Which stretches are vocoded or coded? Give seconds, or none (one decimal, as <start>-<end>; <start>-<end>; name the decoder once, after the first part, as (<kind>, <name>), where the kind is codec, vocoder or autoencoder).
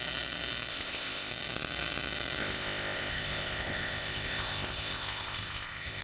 0.7-1.3 (codec, ZipCodec); 2.4-6.0